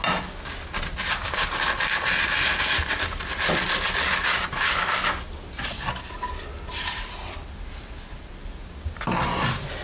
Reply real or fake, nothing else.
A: real